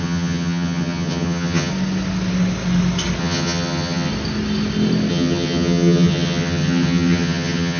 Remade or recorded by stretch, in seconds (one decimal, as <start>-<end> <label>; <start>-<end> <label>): 0.0-1.7 remade; 1.7-3.2 recorded; 3.2-4.1 remade; 4.1-5.1 recorded; 5.1-7.8 remade